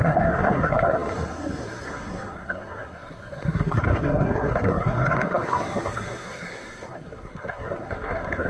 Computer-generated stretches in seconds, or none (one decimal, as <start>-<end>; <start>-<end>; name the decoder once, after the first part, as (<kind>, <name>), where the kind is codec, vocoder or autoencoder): 0.0-8.5 (codec, SNAC)

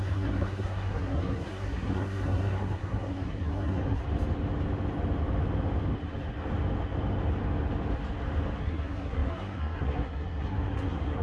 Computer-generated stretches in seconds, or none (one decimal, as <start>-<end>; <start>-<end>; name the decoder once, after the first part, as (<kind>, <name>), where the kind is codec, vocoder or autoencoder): 0.0-4.0 (codec, SNAC); 8.6-11.2

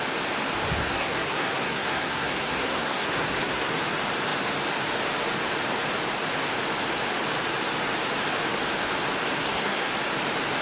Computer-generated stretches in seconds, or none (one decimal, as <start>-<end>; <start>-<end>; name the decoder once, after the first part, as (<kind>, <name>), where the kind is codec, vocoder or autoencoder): 0.8-3.7 (codec, SNAC); 9.4-9.9

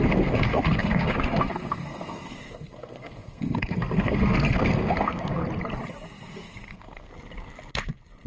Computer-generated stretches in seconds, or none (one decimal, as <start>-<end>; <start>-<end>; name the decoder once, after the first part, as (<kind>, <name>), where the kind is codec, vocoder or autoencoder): 0.0-5.4 (codec, SNAC); 6.3-7.1